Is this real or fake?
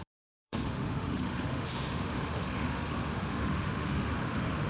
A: fake